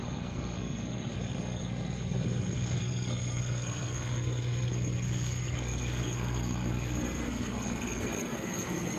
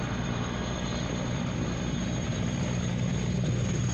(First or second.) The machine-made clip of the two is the first